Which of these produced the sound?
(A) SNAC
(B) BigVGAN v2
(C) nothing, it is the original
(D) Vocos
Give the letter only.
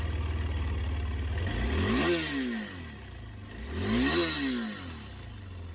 C